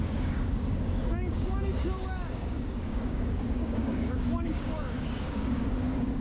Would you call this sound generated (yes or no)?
yes